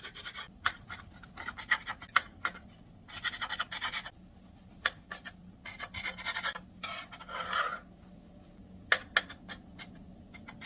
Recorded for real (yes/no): yes